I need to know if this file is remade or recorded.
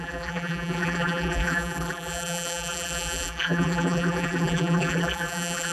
remade